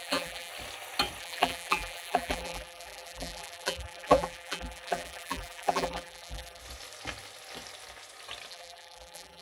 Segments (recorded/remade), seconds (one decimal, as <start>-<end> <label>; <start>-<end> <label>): 0.0-0.5 remade; 0.5-1.2 recorded; 1.2-6.6 remade; 6.6-8.5 recorded; 8.5-9.4 remade